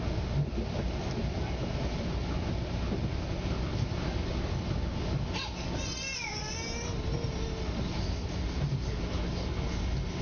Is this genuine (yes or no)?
yes